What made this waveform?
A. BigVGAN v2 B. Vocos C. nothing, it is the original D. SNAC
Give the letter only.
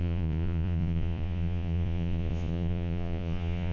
B